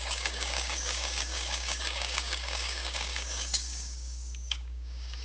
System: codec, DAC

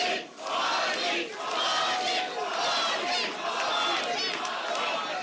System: none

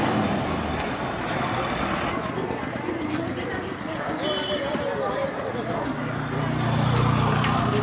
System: none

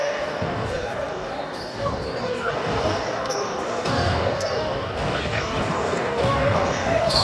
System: codec, DAC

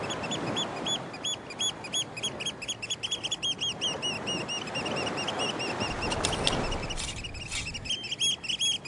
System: none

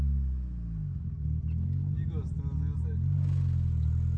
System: none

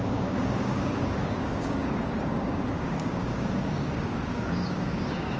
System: codec, DAC